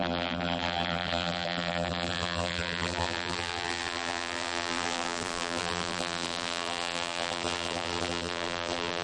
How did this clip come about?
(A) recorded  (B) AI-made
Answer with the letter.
B